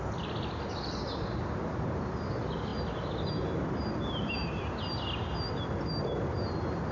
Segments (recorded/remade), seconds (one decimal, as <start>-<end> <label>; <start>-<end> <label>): 0.0-6.9 recorded